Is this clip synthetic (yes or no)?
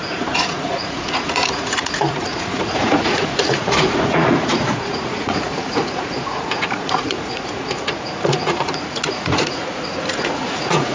yes